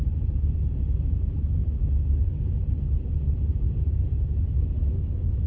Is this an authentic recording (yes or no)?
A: yes